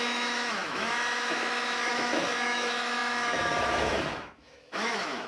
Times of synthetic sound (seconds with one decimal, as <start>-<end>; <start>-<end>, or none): 0.0-5.3